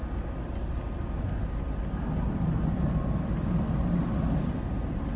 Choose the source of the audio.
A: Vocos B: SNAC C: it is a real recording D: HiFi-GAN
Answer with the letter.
C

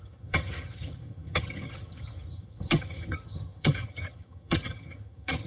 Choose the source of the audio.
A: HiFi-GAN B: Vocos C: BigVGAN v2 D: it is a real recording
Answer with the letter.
A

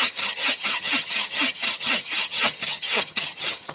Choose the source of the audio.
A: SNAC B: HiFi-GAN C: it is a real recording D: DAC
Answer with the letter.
B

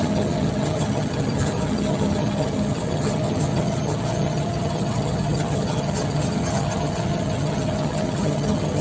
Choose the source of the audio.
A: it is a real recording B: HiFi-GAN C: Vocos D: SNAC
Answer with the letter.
B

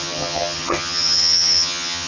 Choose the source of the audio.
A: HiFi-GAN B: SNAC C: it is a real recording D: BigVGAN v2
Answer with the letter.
A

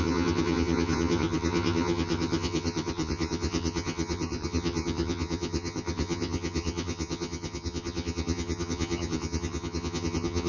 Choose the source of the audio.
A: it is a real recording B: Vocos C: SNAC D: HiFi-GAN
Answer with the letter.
D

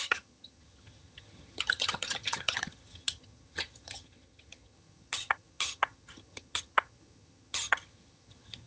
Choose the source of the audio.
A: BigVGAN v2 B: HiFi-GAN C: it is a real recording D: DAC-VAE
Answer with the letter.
B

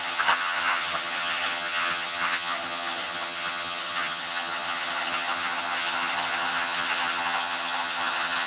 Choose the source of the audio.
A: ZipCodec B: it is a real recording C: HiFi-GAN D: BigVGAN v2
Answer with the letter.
C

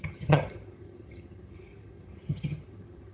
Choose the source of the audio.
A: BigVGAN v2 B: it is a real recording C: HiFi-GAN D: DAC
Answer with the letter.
C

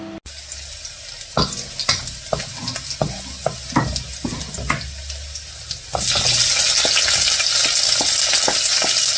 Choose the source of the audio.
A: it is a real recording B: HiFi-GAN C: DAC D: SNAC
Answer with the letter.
A